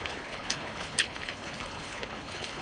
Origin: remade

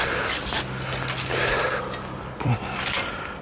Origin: recorded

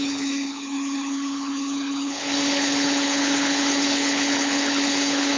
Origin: remade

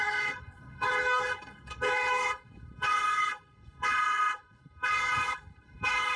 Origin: remade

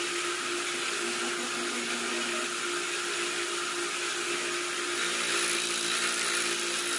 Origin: recorded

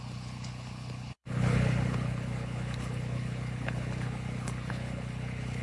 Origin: remade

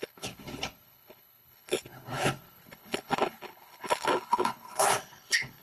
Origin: remade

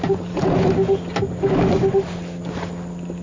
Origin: recorded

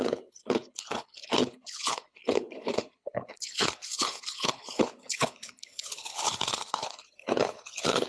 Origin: remade